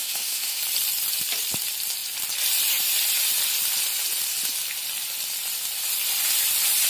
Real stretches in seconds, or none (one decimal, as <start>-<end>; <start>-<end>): 0.6-6.9